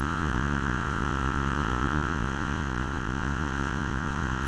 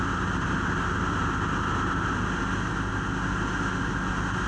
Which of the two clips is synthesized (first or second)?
first